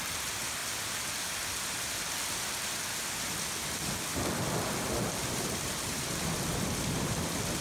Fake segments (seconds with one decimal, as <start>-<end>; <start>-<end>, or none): 0.0-0.6; 5.1-7.6